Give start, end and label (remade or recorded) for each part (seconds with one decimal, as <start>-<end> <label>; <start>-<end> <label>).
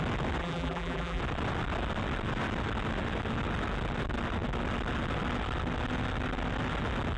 0.0-0.4 recorded; 0.4-1.2 remade; 1.2-7.2 recorded